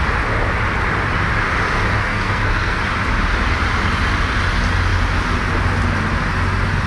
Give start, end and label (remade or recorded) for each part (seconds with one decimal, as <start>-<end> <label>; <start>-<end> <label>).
0.0-2.0 recorded; 2.0-2.8 remade; 2.8-6.9 recorded

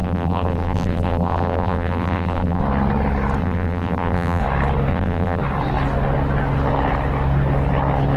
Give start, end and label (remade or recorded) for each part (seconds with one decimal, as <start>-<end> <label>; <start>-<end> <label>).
0.0-2.6 remade; 2.6-3.4 recorded; 3.4-4.4 remade; 4.4-4.9 recorded; 4.9-5.4 remade; 5.4-8.2 recorded

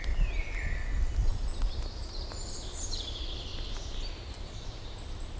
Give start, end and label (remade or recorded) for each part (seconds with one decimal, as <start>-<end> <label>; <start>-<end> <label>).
0.0-5.4 recorded

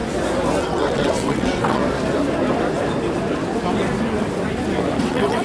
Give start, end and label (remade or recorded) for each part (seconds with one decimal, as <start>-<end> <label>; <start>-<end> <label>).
0.0-0.6 recorded; 0.6-1.8 remade; 1.8-5.0 recorded; 5.0-5.4 remade

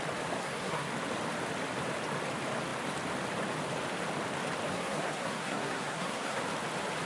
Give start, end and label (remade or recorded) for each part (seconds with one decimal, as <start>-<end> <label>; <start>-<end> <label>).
0.0-0.4 recorded; 0.4-0.9 remade; 0.9-4.7 recorded; 4.7-6.4 remade; 6.4-7.1 recorded

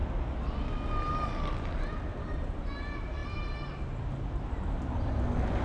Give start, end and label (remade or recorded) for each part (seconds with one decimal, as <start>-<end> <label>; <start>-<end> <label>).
0.0-5.6 recorded

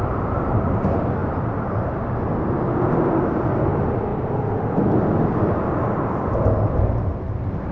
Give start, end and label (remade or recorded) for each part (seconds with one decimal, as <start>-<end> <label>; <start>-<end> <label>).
0.0-7.7 recorded